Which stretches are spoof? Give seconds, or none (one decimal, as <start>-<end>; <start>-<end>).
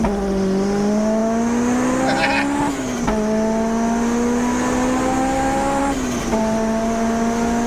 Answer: none